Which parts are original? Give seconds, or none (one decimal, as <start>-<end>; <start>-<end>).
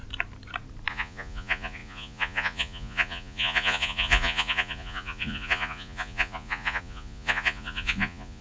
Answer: 0.0-0.9